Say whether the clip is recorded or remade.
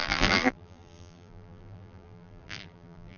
remade